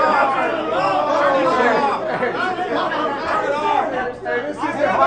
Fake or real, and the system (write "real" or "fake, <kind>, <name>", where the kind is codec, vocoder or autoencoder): real